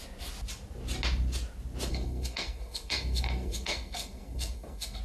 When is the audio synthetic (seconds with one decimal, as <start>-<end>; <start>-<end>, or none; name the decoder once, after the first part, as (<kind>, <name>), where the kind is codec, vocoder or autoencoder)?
1.9-5.0 (codec, SNAC)